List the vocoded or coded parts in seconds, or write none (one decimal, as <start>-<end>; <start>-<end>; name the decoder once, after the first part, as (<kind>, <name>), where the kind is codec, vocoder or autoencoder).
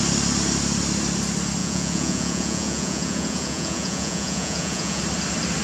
1.6-5.0 (vocoder, Vocos)